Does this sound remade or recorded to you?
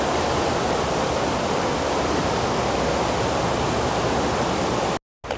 recorded